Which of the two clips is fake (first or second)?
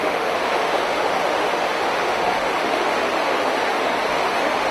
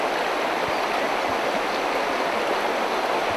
first